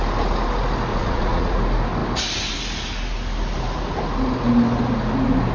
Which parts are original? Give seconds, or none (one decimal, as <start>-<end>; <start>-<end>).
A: 0.0-0.9; 1.6-5.5